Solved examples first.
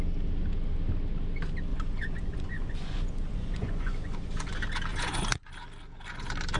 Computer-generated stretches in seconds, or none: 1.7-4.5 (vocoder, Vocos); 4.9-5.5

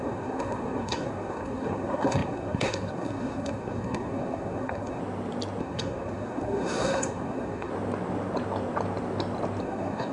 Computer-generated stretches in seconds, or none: 0.0-5.0 (codec, SNAC); 5.6-7.7; 9.6-10.1